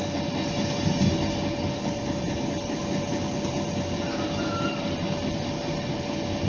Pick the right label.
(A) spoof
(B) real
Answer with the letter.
B